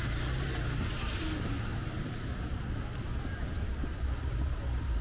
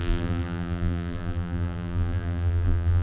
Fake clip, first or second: second